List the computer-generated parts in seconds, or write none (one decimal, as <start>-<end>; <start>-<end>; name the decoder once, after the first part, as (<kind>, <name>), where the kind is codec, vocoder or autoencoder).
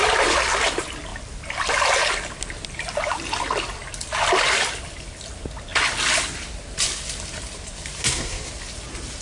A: 8.0-8.5 (codec, SNAC)